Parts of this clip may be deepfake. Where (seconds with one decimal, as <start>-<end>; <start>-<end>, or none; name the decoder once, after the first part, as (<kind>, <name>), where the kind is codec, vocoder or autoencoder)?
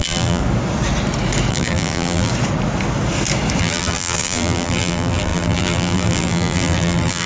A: 0.0-0.4 (vocoder, BigVGAN v2); 1.5-2.3; 3.6-7.3